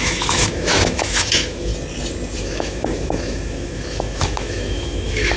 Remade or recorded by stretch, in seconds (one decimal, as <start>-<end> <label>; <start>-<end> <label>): 0.0-1.7 remade; 1.7-2.4 recorded; 2.4-5.4 remade